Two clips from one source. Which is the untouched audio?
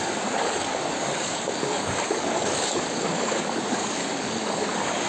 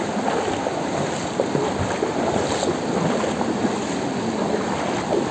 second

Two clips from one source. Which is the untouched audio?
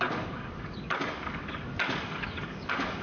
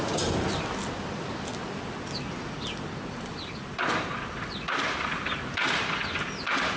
second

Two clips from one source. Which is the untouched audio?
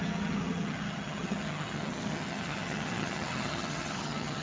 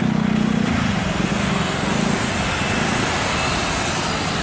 second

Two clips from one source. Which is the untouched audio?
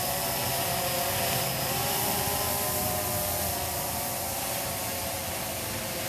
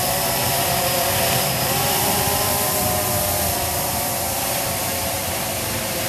first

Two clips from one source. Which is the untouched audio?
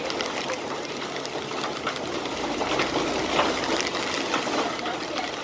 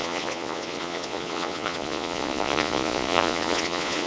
first